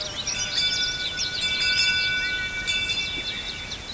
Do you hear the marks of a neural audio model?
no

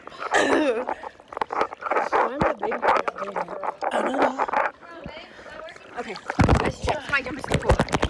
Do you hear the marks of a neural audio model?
no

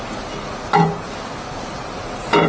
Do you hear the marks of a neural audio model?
no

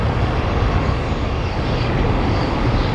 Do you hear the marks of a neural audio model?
yes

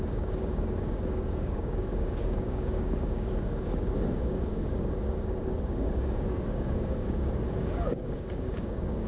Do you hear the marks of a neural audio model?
yes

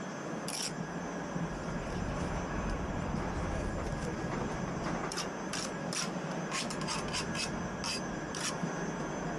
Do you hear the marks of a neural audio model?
no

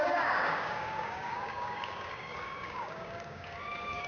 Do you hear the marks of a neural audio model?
yes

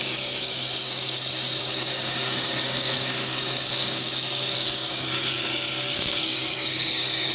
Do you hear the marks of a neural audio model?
yes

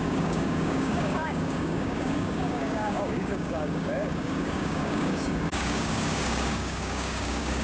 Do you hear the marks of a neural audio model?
yes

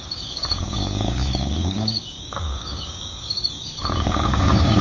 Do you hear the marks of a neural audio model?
yes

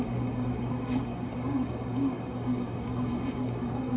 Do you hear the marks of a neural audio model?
yes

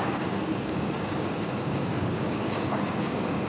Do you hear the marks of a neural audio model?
yes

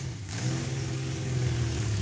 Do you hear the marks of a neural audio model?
yes